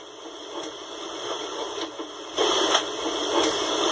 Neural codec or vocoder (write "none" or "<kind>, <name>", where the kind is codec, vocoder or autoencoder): none